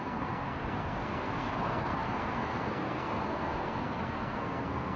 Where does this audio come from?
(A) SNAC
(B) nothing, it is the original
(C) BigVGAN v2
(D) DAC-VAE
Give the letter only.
A